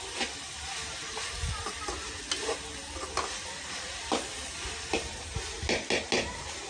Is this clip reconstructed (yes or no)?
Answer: no